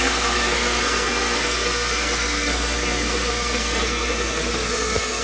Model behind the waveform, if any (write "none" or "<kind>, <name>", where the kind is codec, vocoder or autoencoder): codec, SNAC